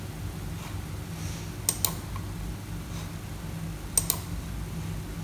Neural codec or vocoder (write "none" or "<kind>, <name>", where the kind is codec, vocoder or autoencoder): none